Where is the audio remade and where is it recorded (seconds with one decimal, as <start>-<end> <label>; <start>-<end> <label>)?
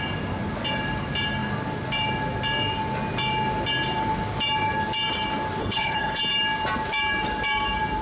0.0-5.6 recorded; 5.6-6.2 remade; 6.2-8.0 recorded